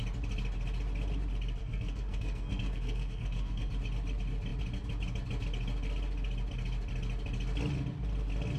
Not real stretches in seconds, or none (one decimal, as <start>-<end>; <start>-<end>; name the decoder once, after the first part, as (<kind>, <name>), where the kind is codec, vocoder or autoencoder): 1.6-3.7 (codec, SNAC)